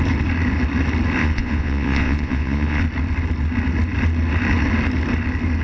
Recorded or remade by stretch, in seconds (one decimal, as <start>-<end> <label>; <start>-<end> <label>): 0.0-1.2 recorded; 1.2-2.8 remade; 2.8-5.6 recorded